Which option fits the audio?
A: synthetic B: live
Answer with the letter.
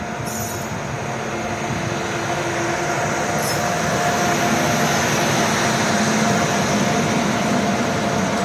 B